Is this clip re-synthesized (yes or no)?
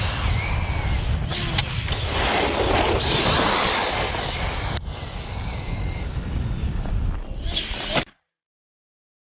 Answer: no